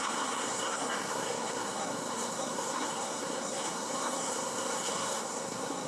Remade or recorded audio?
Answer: remade